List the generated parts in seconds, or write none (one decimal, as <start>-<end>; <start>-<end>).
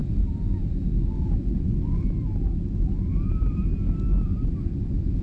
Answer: none